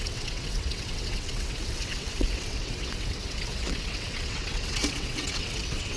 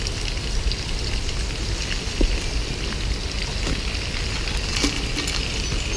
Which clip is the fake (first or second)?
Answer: first